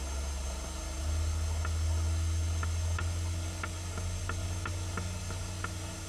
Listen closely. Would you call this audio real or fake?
real